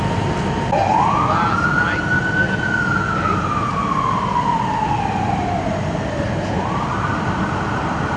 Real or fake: real